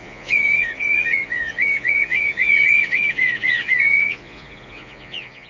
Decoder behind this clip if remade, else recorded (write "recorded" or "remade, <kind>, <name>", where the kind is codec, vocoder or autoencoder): remade, vocoder, Vocos